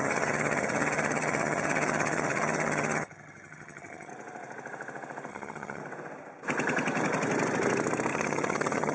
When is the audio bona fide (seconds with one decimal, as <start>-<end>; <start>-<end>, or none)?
4.1-5.3; 5.8-8.1